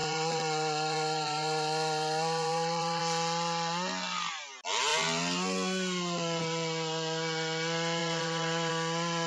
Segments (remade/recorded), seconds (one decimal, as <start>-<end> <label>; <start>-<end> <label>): 0.0-3.0 remade; 3.0-8.0 recorded; 8.0-8.7 remade; 8.7-9.3 recorded